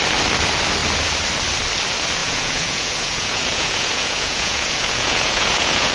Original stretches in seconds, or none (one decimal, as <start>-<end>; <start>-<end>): 0.0-2.2